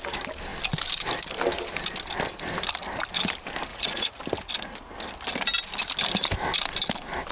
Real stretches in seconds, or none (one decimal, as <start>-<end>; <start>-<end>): 0.0-3.7; 4.2-7.3

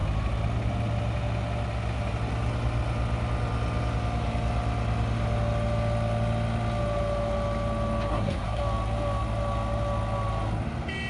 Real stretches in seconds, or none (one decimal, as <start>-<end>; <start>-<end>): 0.0-8.1; 8.6-11.1

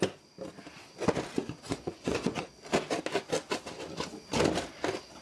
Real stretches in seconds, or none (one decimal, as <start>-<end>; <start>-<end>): 0.0-1.4; 2.5-5.2

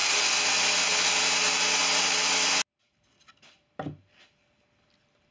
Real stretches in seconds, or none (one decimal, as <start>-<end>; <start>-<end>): 0.0-5.3

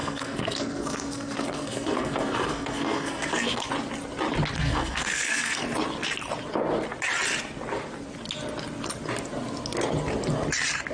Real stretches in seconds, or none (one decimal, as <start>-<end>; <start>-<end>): 3.7-4.6; 5.6-10.9

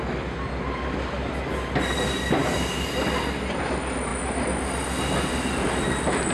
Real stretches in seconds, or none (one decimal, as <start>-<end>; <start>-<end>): 0.0-2.4; 3.6-6.3

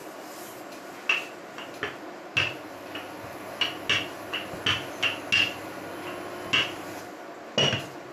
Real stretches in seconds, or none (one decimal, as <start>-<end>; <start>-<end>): 0.0-8.1